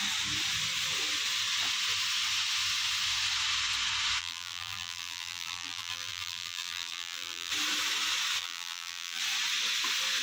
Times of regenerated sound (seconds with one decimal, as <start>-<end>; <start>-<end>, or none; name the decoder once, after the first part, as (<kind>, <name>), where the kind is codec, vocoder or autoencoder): 4.2-7.5 (vocoder, BigVGAN v2); 8.4-9.2